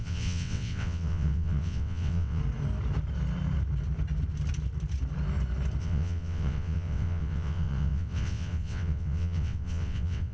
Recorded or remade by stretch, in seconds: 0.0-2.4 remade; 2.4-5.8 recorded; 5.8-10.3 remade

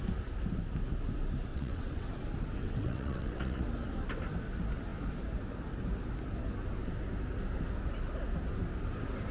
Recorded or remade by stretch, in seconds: 0.0-1.5 recorded; 1.5-2.1 remade; 2.1-2.6 recorded; 2.6-3.6 remade; 3.6-9.3 recorded

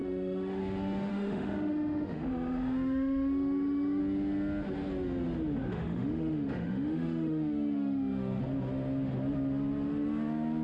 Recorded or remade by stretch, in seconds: 0.0-0.6 remade; 0.6-1.1 recorded; 1.1-4.0 remade; 4.0-5.7 recorded; 5.7-8.4 remade; 8.4-10.6 recorded

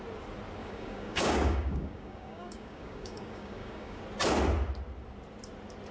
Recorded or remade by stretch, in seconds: 0.0-0.6 recorded; 0.6-4.0 remade; 4.0-5.9 recorded

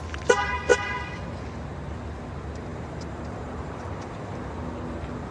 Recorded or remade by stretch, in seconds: 0.0-2.7 recorded; 2.7-4.3 remade; 4.3-5.3 recorded

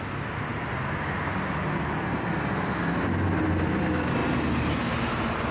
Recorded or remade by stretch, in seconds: 0.0-5.5 recorded

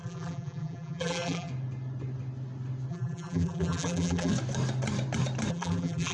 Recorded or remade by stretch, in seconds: 0.0-1.5 remade; 1.5-2.9 recorded; 2.9-4.3 remade; 4.3-5.5 recorded; 5.5-6.1 remade

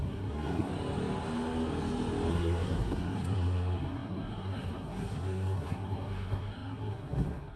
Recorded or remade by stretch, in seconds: 0.0-0.7 remade; 0.7-2.3 recorded; 2.3-7.6 remade